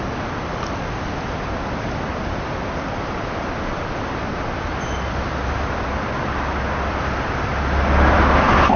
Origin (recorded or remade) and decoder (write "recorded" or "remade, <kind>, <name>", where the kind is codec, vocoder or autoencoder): recorded